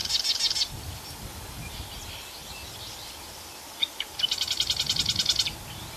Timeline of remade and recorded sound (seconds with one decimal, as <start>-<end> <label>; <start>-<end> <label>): 0.0-6.0 recorded